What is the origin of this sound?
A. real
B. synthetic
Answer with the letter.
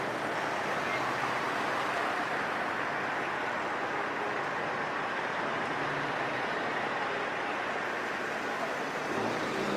A